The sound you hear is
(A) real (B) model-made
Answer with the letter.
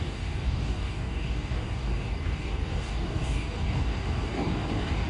B